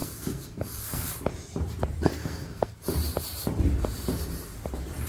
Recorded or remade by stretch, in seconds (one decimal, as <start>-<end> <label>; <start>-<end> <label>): 0.0-1.1 remade; 1.1-2.1 recorded; 2.1-2.8 remade; 2.8-5.1 recorded